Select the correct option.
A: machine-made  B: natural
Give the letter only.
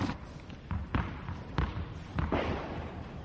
B